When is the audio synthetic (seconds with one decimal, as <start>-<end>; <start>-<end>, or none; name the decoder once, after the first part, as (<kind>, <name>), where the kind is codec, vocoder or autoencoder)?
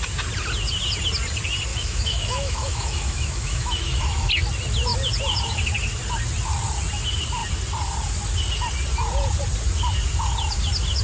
1.7-4.3 (autoencoder, DAC-VAE)